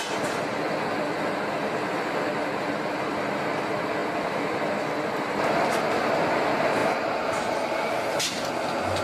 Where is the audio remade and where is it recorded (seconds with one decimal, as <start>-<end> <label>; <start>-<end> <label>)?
0.0-9.0 recorded